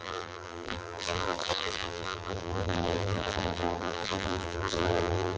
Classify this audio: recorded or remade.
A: remade